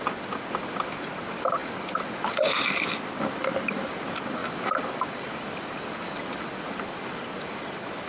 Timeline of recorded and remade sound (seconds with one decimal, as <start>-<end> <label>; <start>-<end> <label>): 0.0-8.1 recorded